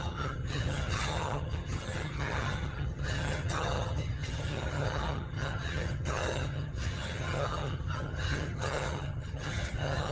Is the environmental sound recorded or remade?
remade